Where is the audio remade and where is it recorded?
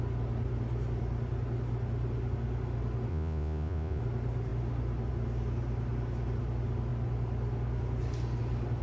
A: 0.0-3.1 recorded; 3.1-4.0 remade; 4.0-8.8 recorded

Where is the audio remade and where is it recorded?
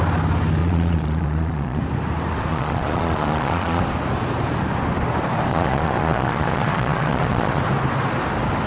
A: 0.0-0.6 recorded; 0.6-1.8 remade; 1.8-2.5 recorded; 2.5-3.8 remade; 3.8-5.5 recorded; 5.5-7.6 remade; 7.6-8.7 recorded